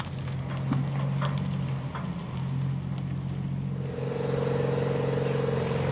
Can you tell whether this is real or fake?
real